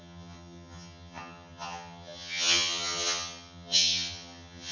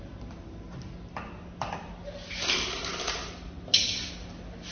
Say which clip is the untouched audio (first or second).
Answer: second